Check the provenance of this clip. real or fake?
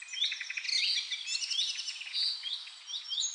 real